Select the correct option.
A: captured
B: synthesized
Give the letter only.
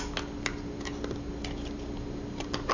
A